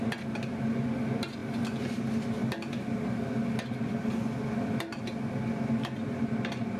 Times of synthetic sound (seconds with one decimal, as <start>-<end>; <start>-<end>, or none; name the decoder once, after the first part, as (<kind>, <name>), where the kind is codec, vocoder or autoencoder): none

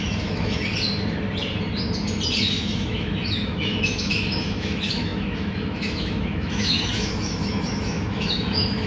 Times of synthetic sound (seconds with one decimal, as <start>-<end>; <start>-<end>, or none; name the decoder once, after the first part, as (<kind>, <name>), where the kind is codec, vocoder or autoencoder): 0.0-0.7 (autoencoder, DAC-VAE); 2.5-8.9

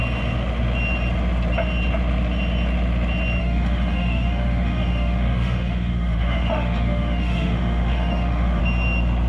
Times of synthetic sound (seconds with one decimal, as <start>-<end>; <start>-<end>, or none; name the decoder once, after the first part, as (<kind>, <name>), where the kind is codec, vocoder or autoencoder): 3.4-8.6 (autoencoder, DAC-VAE)

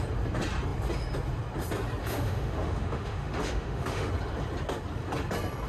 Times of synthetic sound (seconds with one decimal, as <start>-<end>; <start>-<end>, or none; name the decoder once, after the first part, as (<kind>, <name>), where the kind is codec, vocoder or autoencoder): 2.0-4.1 (autoencoder, DAC-VAE)